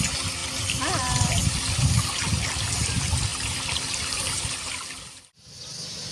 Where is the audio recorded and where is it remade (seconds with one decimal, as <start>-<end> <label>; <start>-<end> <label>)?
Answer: 0.0-6.1 recorded